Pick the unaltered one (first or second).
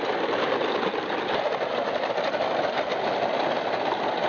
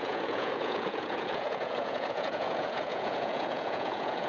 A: first